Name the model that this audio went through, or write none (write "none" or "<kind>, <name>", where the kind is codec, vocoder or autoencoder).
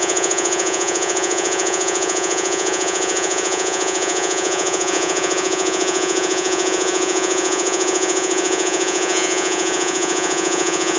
vocoder, Vocos